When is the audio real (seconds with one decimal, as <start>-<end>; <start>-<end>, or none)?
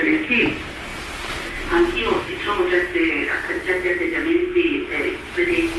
0.0-5.8